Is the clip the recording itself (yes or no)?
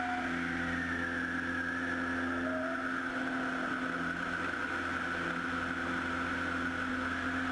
yes